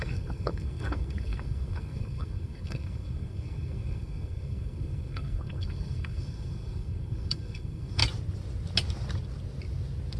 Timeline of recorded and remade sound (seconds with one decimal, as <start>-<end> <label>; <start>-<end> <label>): 0.0-8.0 remade; 8.0-10.2 recorded

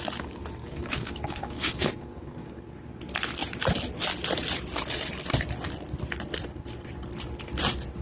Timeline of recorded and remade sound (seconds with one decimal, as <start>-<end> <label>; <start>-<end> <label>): 0.0-0.6 recorded; 0.6-2.6 remade; 2.6-8.0 recorded

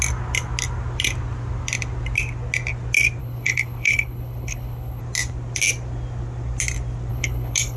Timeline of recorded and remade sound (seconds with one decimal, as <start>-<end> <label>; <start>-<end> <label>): 0.0-3.2 recorded; 3.2-5.0 remade; 5.0-7.1 recorded; 7.1-7.8 remade